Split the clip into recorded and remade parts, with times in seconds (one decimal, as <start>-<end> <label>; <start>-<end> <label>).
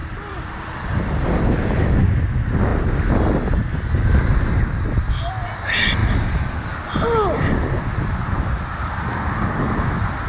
0.0-2.0 remade; 2.0-10.3 recorded